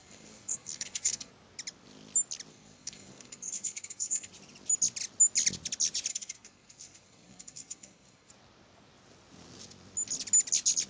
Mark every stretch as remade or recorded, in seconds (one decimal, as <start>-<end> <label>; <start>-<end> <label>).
0.0-1.3 remade; 1.3-2.5 recorded; 2.5-4.3 remade; 4.3-6.1 recorded; 6.1-8.3 remade; 8.3-10.9 recorded